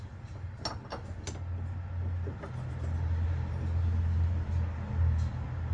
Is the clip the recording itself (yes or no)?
yes